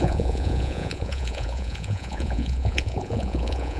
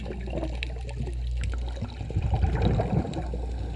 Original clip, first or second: second